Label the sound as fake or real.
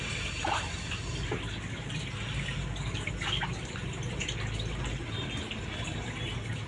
real